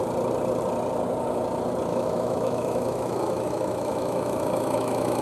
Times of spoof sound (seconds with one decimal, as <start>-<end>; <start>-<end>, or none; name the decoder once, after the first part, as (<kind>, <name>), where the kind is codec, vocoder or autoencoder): 1.9-5.2 (autoencoder, DAC-VAE)

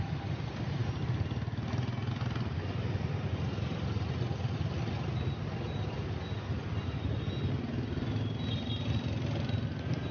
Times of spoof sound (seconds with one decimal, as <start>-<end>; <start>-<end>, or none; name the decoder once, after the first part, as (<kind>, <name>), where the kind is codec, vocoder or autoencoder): none

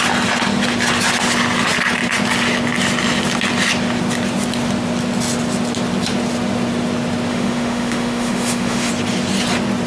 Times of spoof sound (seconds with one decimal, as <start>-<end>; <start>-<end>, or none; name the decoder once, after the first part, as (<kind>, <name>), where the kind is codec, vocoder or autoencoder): 7.3-8.9 (autoencoder, DAC-VAE)

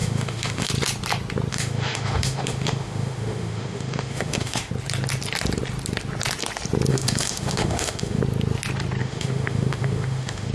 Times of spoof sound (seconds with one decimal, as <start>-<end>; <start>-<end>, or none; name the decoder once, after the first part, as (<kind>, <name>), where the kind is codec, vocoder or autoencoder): 0.0-0.7 (autoencoder, DAC-VAE); 1.5-4.7; 6.9-8.2; 9.0-10.5

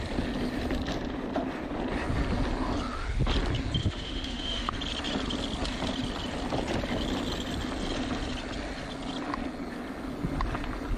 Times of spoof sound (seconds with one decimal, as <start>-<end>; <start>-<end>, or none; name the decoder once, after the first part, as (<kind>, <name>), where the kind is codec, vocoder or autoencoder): 3.8-4.7 (autoencoder, DAC-VAE)

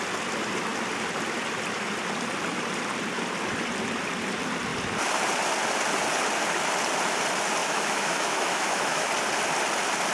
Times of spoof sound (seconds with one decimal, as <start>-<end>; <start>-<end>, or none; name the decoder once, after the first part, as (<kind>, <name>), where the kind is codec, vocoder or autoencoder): 7.6-9.1 (autoencoder, DAC-VAE)

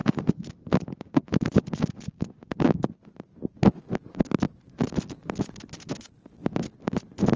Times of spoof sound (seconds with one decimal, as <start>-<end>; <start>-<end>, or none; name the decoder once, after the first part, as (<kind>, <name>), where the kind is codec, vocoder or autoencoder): none